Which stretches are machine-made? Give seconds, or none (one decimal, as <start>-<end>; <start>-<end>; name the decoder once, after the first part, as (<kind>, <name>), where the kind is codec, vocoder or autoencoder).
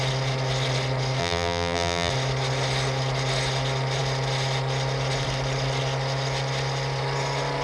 1.2-2.1 (vocoder, BigVGAN v2)